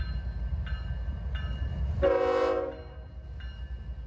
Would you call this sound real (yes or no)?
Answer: yes